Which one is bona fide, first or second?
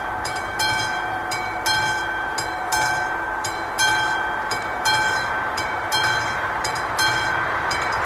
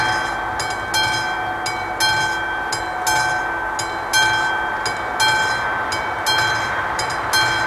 second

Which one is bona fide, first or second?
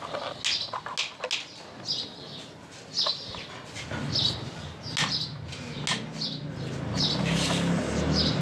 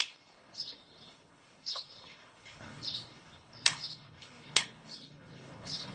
first